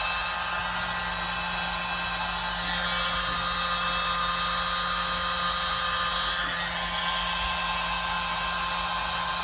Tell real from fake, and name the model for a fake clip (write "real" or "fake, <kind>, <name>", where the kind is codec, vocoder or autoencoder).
real